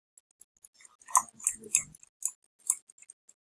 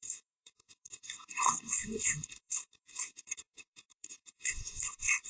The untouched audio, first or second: first